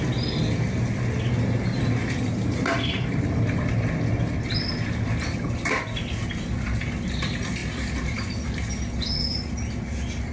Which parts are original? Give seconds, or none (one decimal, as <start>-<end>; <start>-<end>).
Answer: 0.0-10.3